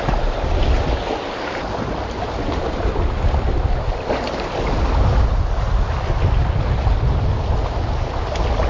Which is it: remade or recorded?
recorded